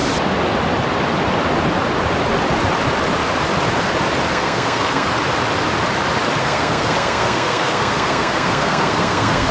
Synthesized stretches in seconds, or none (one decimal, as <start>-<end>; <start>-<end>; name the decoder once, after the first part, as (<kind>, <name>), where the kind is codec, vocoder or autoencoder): 4.3-5.1 (codec, SNAC); 6.4-9.5